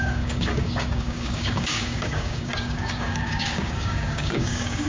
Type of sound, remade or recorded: remade